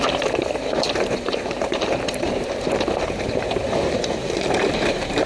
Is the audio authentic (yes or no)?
no